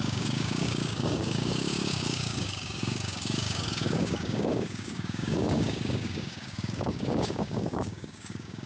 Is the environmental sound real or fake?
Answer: fake